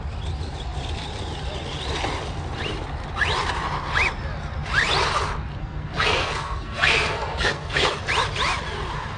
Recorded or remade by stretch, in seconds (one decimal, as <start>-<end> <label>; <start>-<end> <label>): 0.0-5.6 recorded; 5.6-7.9 remade; 7.9-9.2 recorded